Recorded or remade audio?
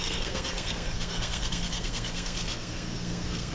remade